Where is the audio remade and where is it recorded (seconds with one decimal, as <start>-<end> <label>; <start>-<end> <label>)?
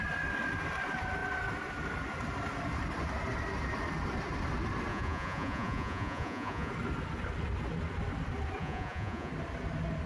0.0-4.9 recorded; 4.9-6.7 remade; 6.7-8.6 recorded; 8.6-9.3 remade; 9.3-10.1 recorded